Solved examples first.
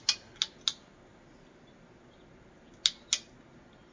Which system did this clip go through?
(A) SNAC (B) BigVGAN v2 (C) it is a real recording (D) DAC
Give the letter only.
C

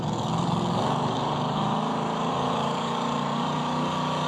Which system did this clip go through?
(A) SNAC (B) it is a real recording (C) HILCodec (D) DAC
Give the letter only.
D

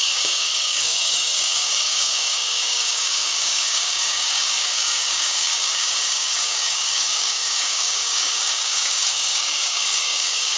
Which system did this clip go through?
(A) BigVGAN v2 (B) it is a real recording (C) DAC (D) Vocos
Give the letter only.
C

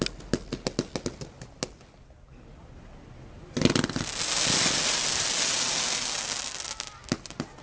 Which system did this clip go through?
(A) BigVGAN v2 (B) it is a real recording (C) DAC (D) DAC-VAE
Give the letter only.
B